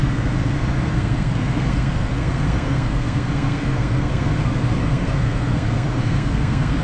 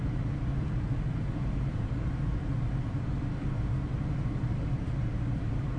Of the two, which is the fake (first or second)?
first